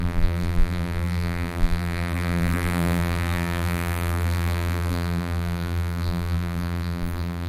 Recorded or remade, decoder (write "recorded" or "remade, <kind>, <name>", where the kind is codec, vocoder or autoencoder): remade, vocoder, BigVGAN v2